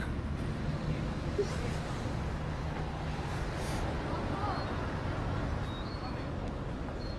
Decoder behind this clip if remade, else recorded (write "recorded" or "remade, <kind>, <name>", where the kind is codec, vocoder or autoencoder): recorded